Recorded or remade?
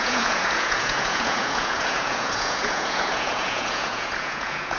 remade